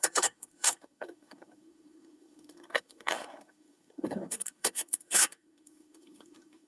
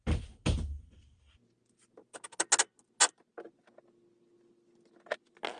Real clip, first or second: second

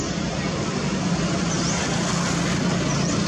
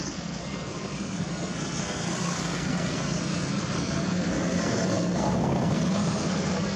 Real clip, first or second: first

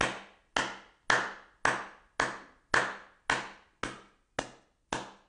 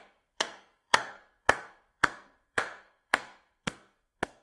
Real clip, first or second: first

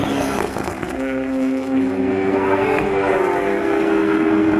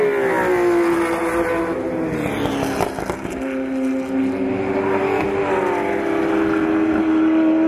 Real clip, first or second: second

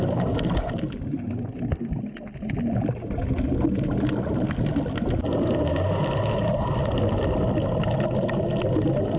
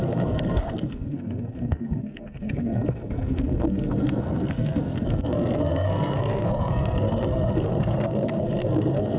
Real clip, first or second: first